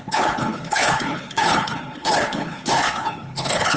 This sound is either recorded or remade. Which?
remade